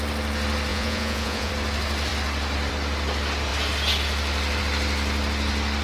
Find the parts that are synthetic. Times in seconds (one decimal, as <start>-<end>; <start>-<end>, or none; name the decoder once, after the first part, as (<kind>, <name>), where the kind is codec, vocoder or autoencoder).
0.7-1.5 (vocoder, Vocos)